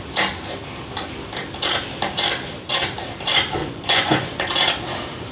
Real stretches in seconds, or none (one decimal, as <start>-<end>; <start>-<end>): 0.0-3.6; 4.5-5.3